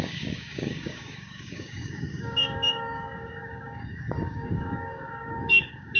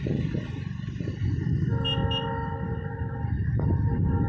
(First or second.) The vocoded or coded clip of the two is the first